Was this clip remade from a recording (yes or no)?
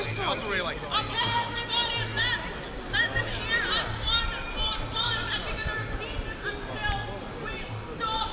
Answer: no